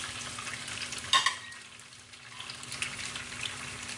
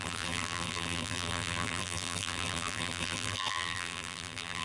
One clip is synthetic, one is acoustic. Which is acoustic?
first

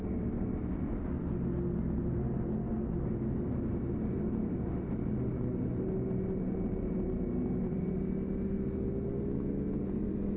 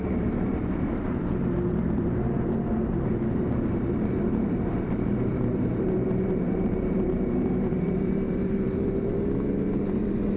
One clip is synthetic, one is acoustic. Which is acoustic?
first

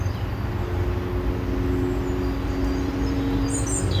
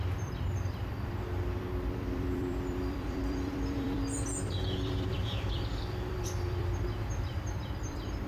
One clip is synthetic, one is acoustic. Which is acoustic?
first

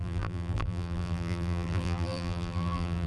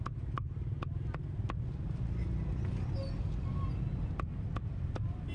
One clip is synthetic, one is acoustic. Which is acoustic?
second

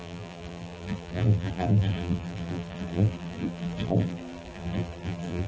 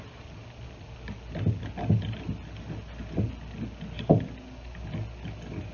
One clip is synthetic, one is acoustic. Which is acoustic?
second